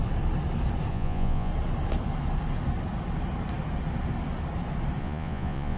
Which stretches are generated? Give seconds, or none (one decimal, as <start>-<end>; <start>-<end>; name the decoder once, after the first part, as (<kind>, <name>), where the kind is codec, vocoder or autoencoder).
0.9-1.5 (vocoder, Vocos); 5.0-5.8